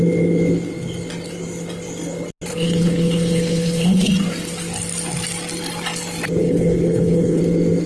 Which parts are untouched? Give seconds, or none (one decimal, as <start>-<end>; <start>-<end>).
0.0-2.5; 4.1-6.4; 7.4-7.9